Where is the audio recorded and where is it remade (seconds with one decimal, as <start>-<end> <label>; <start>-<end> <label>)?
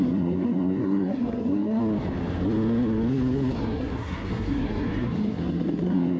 0.0-1.8 remade; 1.8-3.6 recorded; 3.6-6.2 remade